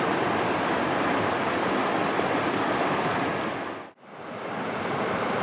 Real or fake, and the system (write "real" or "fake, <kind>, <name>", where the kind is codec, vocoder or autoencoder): real